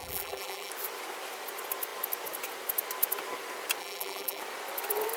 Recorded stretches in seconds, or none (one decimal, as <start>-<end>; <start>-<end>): 0.7-3.8; 4.4-5.2